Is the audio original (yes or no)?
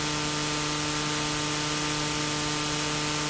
yes